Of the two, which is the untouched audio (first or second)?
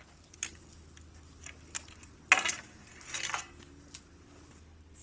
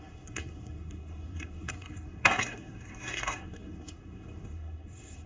first